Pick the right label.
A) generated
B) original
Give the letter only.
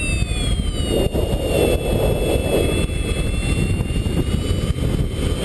B